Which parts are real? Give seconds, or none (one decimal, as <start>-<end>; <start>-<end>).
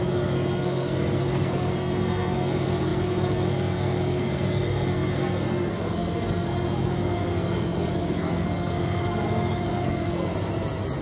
10.3-11.0